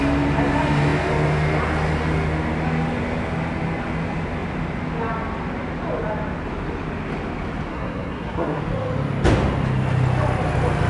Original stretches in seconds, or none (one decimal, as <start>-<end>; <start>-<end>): 0.0-7.7; 8.6-10.9